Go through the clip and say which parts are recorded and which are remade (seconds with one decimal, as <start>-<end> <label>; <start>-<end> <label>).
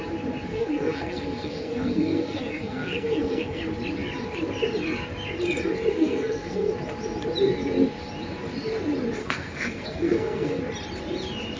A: 0.0-0.5 recorded; 0.5-3.6 remade; 3.6-5.9 recorded; 5.9-6.7 remade; 6.7-9.2 recorded; 9.2-10.6 remade; 10.6-11.6 recorded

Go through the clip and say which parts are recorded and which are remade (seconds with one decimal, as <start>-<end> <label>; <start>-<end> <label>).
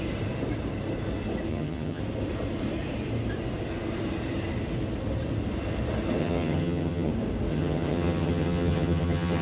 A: 0.0-1.5 recorded; 1.5-2.0 remade; 2.0-6.2 recorded; 6.2-7.1 remade; 7.1-7.5 recorded; 7.5-9.4 remade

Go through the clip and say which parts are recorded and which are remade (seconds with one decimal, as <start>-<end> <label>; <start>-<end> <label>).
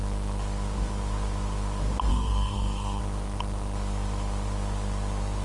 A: 0.0-2.1 recorded; 2.1-3.0 remade; 3.0-5.4 recorded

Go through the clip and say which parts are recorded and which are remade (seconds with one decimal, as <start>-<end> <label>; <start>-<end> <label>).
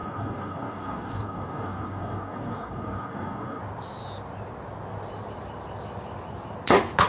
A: 0.0-3.6 remade; 3.6-7.1 recorded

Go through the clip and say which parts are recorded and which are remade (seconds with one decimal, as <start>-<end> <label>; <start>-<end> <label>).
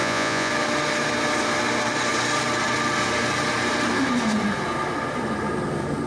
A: 0.0-0.5 remade; 0.5-6.1 recorded